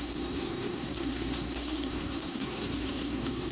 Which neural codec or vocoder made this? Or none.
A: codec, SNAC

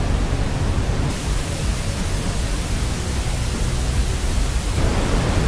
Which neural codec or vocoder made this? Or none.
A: vocoder, BigVGAN v2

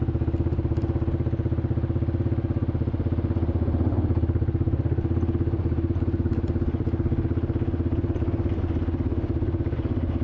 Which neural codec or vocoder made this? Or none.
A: none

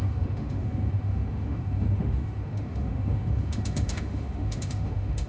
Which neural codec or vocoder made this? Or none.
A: autoencoder, DAC-VAE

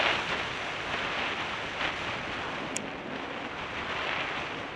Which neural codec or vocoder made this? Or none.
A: none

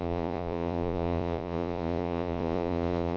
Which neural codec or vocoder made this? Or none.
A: vocoder, Vocos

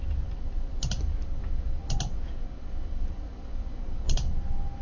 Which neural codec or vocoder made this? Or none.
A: none